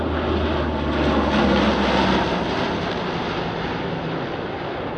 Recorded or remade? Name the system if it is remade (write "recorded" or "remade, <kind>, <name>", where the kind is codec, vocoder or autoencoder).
recorded